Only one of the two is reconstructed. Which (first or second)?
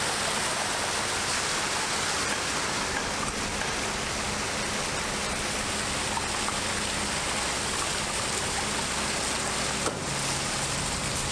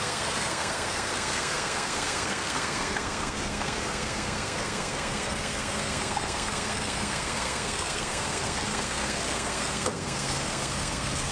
second